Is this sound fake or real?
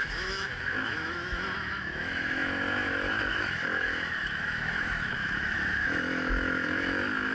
fake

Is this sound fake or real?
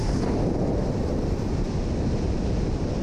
real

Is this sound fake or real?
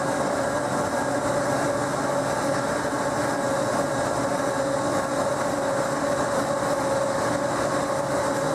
real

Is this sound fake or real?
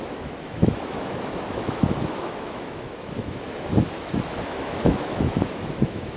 fake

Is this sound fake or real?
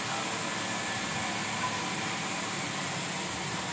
real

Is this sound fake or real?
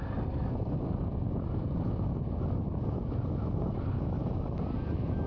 real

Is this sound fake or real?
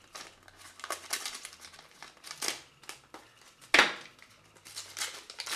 real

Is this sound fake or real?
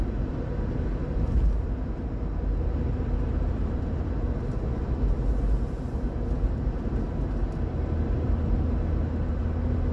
real